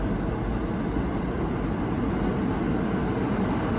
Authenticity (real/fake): real